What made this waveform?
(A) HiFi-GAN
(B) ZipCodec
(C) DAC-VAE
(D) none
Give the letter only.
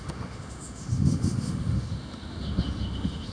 C